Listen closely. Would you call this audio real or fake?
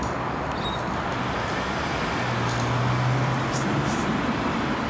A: real